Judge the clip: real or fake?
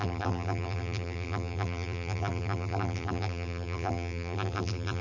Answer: fake